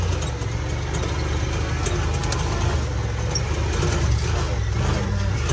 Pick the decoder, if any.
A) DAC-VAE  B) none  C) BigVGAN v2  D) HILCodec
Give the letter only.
B